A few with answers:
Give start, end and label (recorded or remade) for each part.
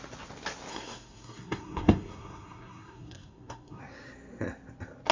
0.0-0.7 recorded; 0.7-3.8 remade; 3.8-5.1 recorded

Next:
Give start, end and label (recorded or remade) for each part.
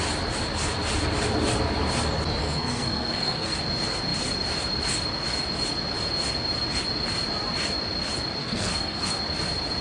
0.0-2.4 recorded; 2.4-3.6 remade; 3.6-8.4 recorded; 8.4-9.1 remade; 9.1-9.8 recorded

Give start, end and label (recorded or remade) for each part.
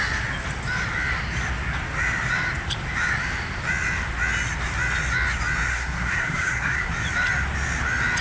0.0-5.7 recorded; 5.7-6.9 remade; 6.9-8.2 recorded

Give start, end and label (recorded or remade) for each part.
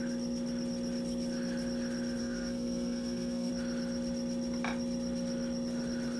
0.0-2.2 recorded; 2.2-3.5 remade; 3.5-6.2 recorded